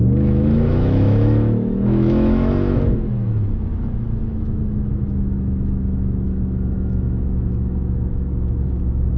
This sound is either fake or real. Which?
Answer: fake